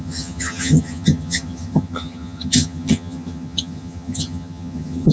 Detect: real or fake fake